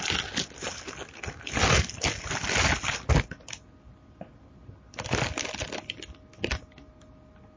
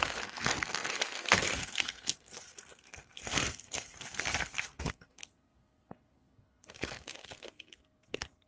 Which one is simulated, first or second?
second